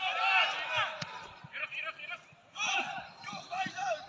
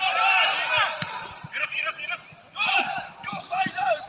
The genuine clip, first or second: first